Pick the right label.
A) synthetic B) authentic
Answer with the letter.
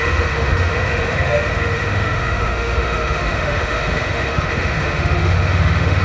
A